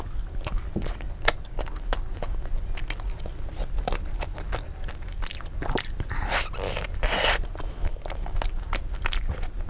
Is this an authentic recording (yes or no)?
yes